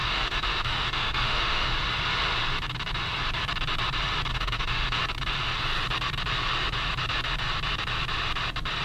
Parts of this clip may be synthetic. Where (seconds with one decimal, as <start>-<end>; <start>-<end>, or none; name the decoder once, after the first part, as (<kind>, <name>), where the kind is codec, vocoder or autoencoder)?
0.0-1.7 (autoencoder, DAC-VAE); 4.3-5.0